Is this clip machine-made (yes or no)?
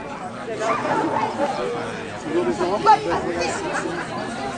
no